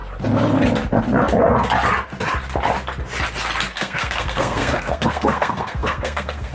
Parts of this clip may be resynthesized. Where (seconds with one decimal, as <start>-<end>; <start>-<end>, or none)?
3.7-6.5